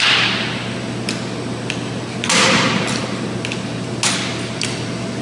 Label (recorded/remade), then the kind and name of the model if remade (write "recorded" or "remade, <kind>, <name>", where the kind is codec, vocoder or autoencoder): recorded